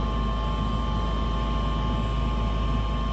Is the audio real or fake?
real